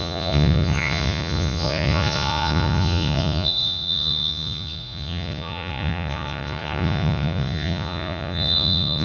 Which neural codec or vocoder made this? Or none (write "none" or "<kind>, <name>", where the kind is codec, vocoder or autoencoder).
vocoder, Vocos